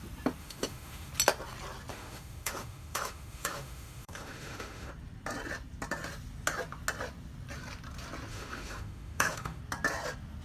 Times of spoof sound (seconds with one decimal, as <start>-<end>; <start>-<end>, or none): 0.4-1.1; 1.9-4.9; 8.3-9.6